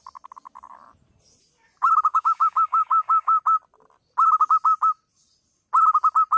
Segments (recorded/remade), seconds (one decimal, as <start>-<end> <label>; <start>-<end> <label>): 0.0-2.1 recorded; 2.1-3.4 remade; 3.4-6.4 recorded